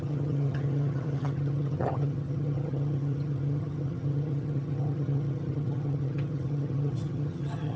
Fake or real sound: fake